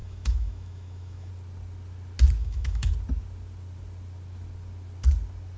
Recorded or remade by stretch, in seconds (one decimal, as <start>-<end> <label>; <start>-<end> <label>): 0.0-1.3 remade; 1.3-2.4 recorded; 2.4-2.9 remade; 2.9-5.6 recorded